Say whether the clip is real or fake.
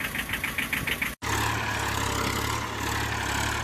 real